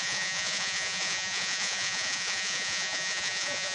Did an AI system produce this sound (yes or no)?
yes